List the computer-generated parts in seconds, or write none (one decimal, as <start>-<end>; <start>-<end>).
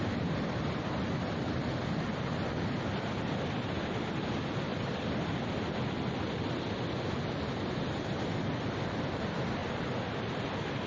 4.7-5.3; 9.6-10.9